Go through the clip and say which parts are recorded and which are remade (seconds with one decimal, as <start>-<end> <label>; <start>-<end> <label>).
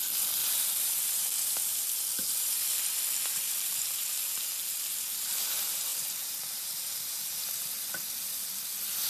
0.0-0.4 recorded; 0.4-1.8 remade; 1.8-3.3 recorded; 3.3-5.3 remade; 5.3-5.9 recorded; 5.9-6.5 remade; 6.5-9.1 recorded